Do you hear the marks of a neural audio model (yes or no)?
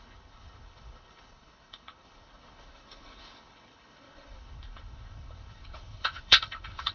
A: yes